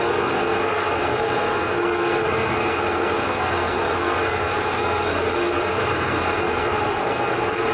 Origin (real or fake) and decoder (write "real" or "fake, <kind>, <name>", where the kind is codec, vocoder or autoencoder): fake, codec, SNAC